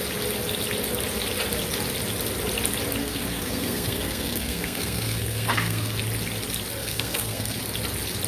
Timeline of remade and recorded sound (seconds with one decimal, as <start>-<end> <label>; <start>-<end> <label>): 0.0-3.0 recorded; 3.0-6.0 remade; 6.0-6.8 recorded; 6.8-7.6 remade; 7.6-8.3 recorded